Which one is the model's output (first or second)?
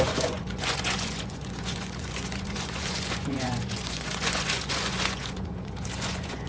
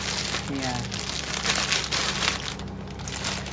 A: first